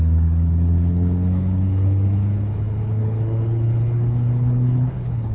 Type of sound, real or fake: fake